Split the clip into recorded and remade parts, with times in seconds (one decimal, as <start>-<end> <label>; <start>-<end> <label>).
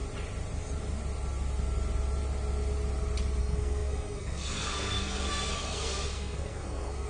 0.0-3.4 recorded; 3.4-7.1 remade